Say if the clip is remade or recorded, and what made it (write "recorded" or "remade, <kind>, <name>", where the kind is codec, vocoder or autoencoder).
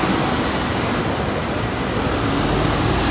recorded